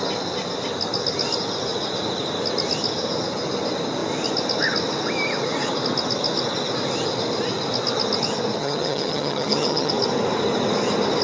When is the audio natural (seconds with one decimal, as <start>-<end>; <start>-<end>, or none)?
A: 0.0-8.6; 9.9-11.2